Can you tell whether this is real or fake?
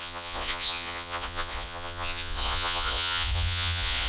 fake